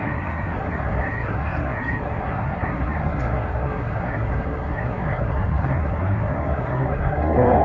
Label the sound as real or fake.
fake